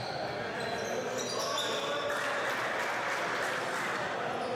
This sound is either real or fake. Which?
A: real